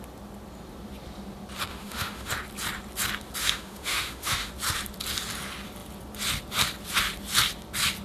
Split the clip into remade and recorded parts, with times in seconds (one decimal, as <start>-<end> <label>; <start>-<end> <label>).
0.0-1.7 recorded; 1.7-2.3 remade; 2.3-3.4 recorded; 3.4-4.5 remade; 4.5-8.0 recorded